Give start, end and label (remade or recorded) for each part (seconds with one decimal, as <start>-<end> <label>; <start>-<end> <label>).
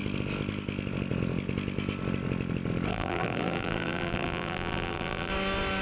0.0-2.9 recorded; 2.9-5.3 remade; 5.3-5.8 recorded